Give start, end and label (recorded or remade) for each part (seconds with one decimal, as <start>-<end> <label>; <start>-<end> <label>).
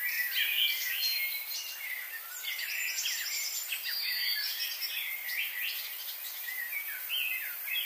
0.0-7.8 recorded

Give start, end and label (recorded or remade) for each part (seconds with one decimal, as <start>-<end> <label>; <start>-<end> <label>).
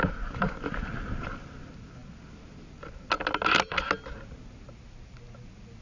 0.0-2.0 remade; 2.0-5.8 recorded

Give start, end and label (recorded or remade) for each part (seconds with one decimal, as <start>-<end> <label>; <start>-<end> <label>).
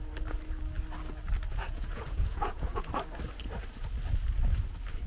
0.0-1.5 recorded; 1.5-3.0 remade; 3.0-5.1 recorded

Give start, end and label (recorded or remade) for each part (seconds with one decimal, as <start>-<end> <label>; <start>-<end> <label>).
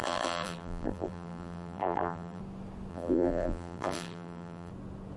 0.0-2.4 remade; 2.4-2.9 recorded; 2.9-4.7 remade; 4.7-5.2 recorded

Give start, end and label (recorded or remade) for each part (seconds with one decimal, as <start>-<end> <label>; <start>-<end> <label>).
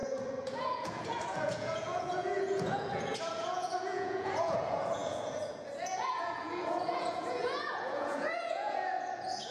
0.0-9.5 remade